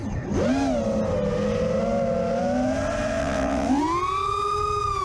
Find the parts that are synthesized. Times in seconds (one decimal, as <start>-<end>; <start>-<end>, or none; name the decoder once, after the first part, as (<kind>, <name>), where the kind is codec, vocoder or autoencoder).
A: 3.2-3.8 (vocoder, WaveNeXt)